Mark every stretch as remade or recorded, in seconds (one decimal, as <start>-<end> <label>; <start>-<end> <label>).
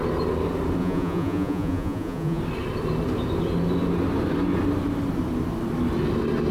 0.0-0.8 recorded; 0.8-2.4 remade; 2.4-6.5 recorded